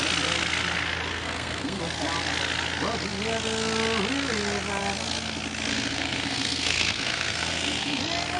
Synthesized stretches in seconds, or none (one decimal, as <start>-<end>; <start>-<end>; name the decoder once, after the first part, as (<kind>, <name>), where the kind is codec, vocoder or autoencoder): 1.1-1.8 (codec, SNAC); 5.7-8.0